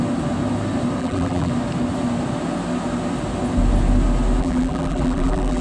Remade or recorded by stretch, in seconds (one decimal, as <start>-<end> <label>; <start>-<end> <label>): 0.0-1.0 recorded; 1.0-1.5 remade; 1.5-4.4 recorded; 4.4-5.6 remade

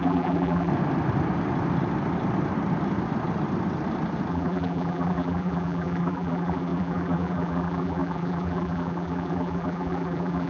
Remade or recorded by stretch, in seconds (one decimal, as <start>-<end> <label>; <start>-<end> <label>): 0.0-0.7 remade; 0.7-4.3 recorded; 4.3-10.5 remade